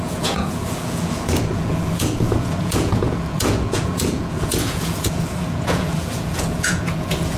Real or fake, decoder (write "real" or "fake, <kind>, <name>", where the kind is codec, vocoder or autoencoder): fake, vocoder, Vocos